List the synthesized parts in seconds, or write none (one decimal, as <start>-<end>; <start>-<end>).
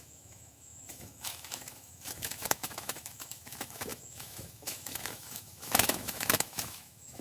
0.0-7.2